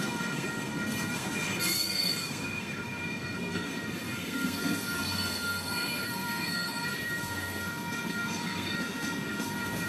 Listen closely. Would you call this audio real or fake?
fake